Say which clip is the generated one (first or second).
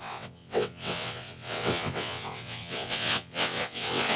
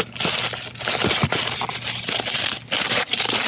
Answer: first